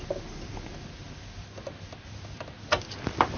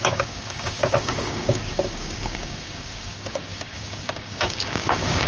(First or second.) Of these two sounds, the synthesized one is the second